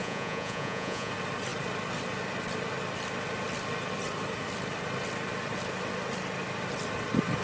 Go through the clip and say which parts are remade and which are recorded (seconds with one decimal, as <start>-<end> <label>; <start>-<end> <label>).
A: 0.0-1.1 remade; 1.1-7.4 recorded